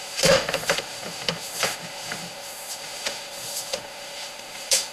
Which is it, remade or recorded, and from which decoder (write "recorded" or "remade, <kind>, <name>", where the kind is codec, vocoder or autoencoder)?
remade, autoencoder, DAC-VAE